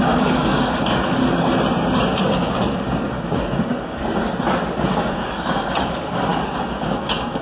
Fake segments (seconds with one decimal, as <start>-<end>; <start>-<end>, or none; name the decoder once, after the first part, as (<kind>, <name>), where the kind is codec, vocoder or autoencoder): 0.0-1.2 (codec, DAC); 2.2-4.0; 4.9-7.4